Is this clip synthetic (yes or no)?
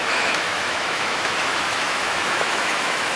yes